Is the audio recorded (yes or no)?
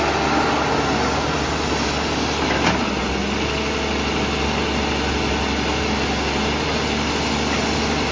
yes